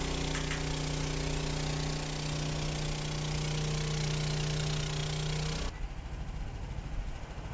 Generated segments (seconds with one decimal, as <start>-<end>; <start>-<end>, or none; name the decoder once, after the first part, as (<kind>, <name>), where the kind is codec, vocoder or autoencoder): none